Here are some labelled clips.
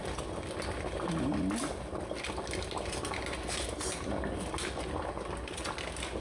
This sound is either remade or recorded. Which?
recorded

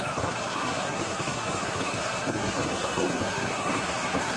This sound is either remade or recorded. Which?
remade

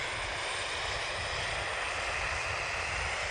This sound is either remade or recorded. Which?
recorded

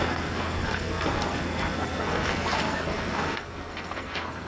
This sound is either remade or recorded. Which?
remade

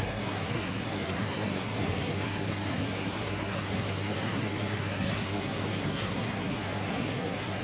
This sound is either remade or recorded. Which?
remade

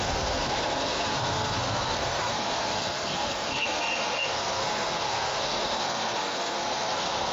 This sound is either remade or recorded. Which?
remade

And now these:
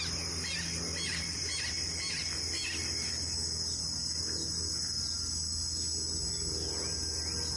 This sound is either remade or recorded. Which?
recorded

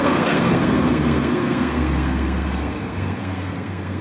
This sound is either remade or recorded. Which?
remade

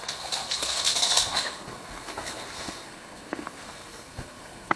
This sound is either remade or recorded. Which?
remade